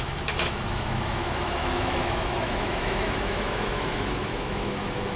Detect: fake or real fake